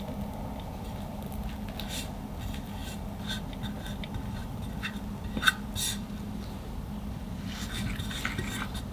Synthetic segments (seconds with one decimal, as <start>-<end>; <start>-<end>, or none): none